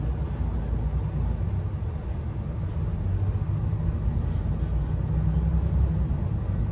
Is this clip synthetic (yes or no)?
no